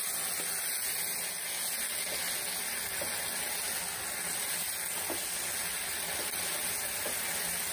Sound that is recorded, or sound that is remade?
recorded